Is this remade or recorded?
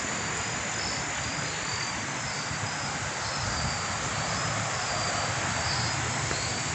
recorded